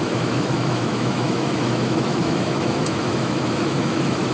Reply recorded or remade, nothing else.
remade